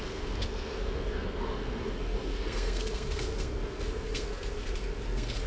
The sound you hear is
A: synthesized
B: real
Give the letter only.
A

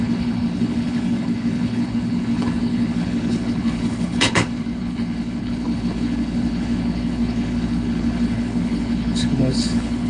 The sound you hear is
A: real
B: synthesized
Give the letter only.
B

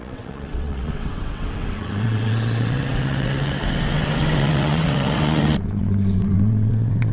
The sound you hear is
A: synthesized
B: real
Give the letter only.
A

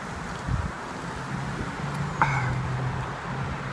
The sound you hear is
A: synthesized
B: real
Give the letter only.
B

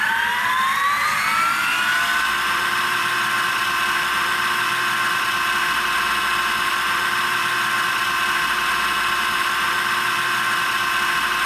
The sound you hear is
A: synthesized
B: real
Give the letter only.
B